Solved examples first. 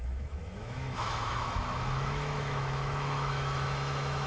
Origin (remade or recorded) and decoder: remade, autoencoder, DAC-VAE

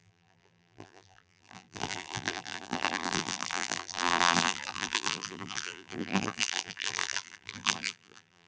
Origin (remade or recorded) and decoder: remade, vocoder, BigVGAN v2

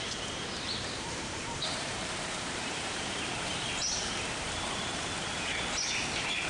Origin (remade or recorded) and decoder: remade, vocoder, BigVGAN v2